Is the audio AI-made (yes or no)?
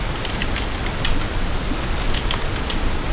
no